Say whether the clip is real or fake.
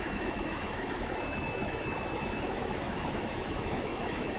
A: fake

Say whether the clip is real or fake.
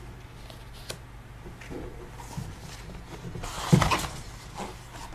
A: real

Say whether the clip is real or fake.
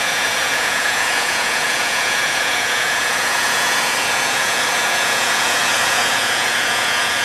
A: fake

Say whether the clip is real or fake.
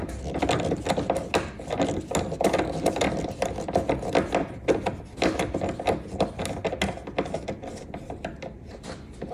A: real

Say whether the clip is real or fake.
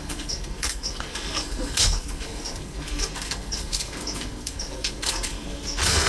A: fake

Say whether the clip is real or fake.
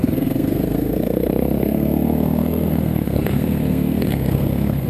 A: fake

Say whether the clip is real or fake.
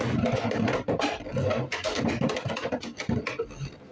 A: real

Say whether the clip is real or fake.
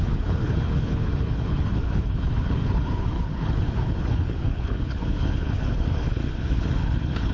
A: fake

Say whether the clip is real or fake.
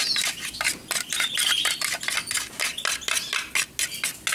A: real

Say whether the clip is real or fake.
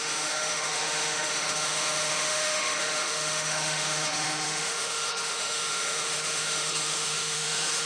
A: fake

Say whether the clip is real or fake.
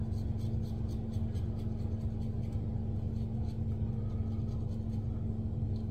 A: real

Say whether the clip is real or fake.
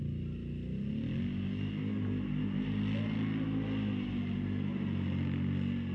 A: real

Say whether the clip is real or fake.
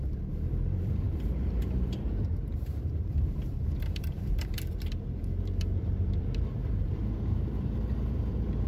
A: fake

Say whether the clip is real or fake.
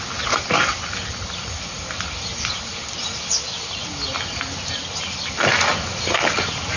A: real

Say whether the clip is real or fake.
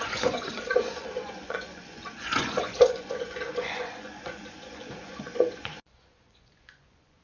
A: fake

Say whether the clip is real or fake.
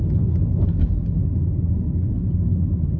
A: real